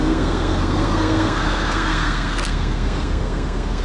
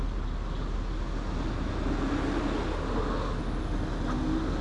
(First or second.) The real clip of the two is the second